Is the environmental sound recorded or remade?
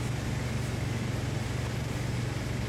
recorded